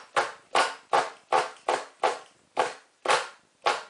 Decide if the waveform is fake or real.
real